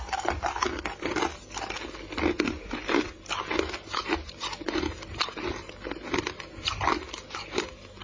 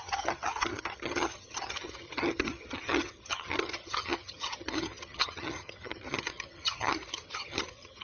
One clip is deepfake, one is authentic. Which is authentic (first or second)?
first